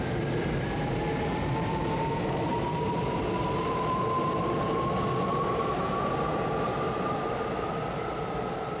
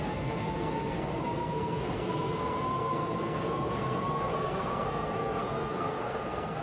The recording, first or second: first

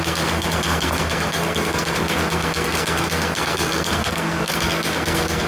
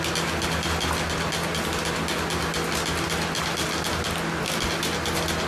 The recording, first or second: second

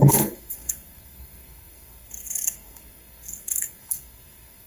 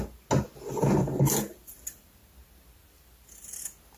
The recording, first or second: second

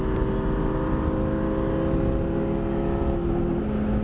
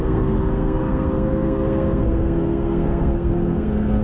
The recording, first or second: first